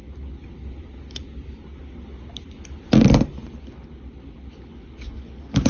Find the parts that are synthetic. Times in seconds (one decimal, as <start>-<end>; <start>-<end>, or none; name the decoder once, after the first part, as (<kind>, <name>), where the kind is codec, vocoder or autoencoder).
none